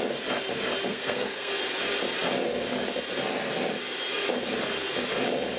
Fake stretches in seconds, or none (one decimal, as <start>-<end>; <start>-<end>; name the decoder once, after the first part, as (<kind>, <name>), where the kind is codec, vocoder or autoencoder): 0.9-1.5 (codec, SNAC)